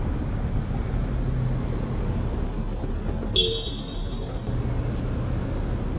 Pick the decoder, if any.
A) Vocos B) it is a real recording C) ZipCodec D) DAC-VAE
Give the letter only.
B